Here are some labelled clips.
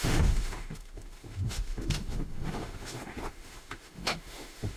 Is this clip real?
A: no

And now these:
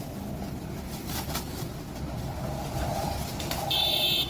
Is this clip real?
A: yes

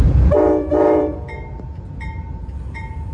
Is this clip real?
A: no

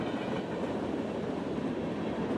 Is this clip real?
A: yes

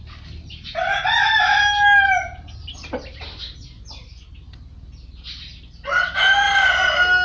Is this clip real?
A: yes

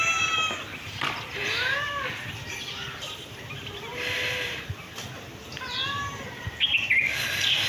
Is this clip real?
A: yes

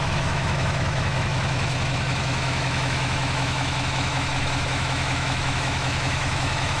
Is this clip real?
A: no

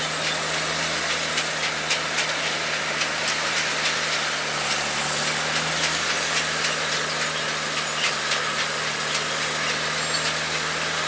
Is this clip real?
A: yes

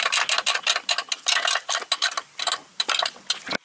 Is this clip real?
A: yes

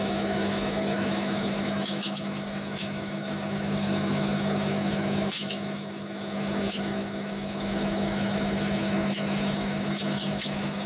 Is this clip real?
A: no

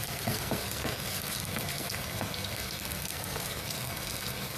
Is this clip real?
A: no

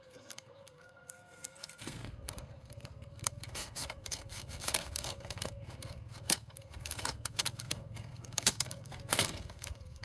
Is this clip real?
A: no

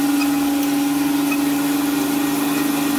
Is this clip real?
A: yes